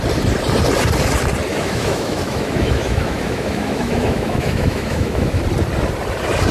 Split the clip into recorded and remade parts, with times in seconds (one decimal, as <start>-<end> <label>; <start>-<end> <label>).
0.0-1.5 recorded; 1.5-5.4 remade; 5.4-6.5 recorded

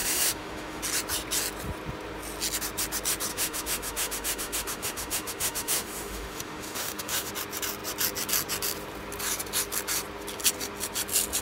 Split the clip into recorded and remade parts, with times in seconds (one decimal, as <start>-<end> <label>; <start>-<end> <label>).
0.0-0.8 remade; 0.8-3.3 recorded; 3.3-7.3 remade; 7.3-11.4 recorded